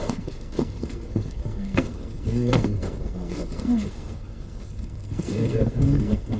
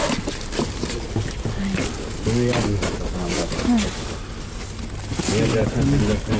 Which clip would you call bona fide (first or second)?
second